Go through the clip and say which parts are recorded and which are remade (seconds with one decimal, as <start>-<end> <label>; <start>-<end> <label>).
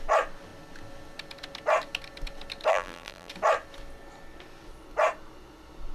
0.0-2.7 recorded; 2.7-3.3 remade; 3.3-5.9 recorded